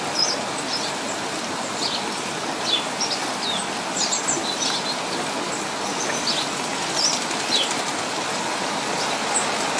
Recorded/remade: recorded